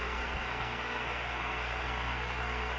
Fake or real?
fake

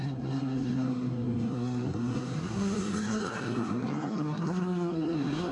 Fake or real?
fake